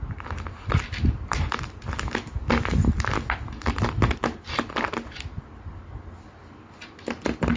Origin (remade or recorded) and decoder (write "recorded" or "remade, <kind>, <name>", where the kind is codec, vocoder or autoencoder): recorded